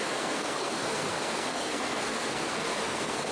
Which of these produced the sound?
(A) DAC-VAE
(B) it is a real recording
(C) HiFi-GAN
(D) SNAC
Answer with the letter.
D